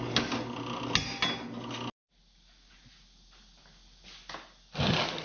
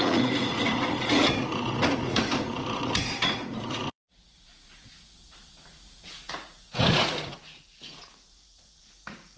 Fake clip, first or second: second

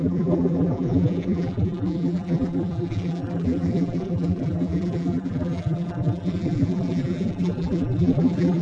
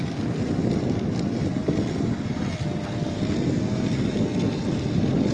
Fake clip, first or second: first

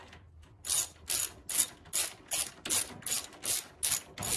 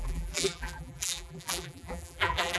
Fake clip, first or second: second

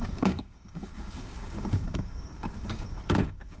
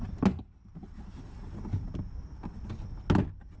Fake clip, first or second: first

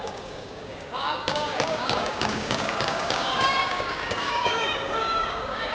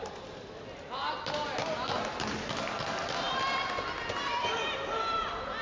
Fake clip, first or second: first